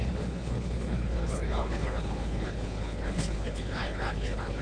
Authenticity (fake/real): fake